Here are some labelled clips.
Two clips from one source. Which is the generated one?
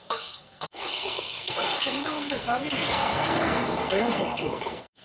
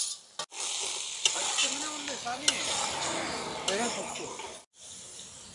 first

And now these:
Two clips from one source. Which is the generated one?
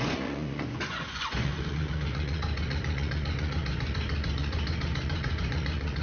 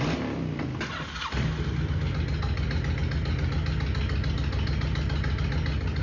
first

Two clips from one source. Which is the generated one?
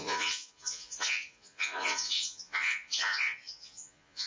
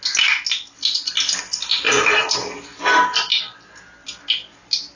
first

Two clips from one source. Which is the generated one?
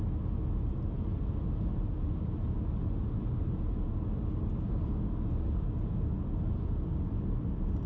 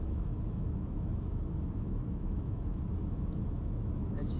second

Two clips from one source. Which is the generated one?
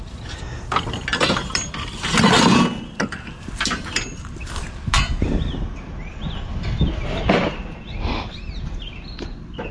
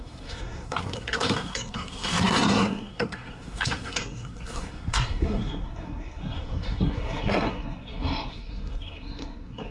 second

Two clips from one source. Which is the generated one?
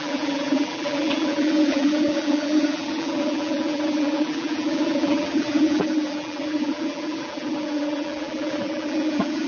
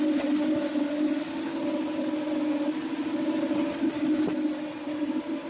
first